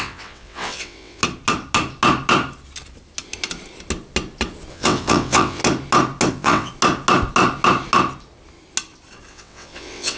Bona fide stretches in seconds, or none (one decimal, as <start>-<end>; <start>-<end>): 1.2-4.7; 5.6-6.3; 6.7-9.3